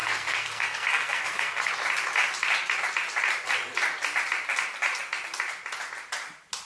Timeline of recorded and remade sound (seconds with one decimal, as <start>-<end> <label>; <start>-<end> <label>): 0.0-1.7 remade; 1.7-6.7 recorded